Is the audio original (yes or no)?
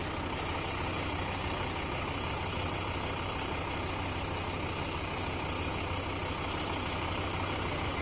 yes